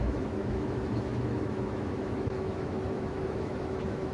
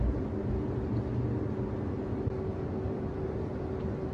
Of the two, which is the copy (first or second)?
first